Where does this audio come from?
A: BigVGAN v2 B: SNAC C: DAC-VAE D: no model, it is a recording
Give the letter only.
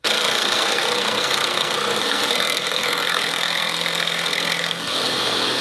B